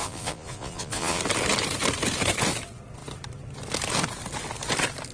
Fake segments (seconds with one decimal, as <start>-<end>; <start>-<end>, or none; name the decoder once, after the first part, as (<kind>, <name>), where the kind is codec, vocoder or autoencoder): 0.0-1.2 (vocoder, Vocos)